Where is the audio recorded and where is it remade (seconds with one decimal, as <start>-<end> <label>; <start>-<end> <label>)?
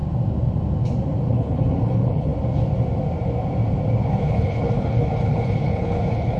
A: 0.0-1.3 recorded; 1.3-2.3 remade; 2.3-4.1 recorded; 4.1-6.4 remade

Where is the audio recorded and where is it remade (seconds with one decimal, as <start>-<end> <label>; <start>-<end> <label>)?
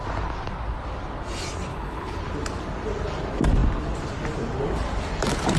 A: 0.0-1.7 recorded; 1.7-2.2 remade; 2.2-5.6 recorded